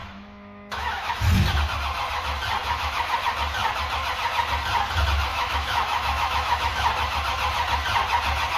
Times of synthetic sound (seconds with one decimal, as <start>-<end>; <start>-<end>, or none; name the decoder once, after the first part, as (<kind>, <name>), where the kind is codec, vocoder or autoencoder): 0.0-1.1 (autoencoder, DAC-VAE); 2.6-3.1; 5.3-6.7